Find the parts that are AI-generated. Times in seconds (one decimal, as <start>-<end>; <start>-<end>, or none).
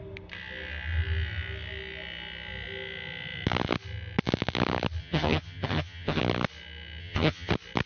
5.0-6.2; 7.0-7.5